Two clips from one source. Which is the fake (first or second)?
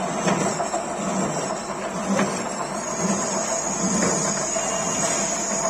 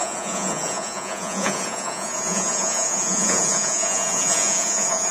second